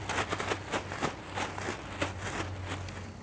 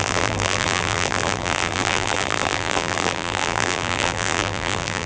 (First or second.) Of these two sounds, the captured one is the first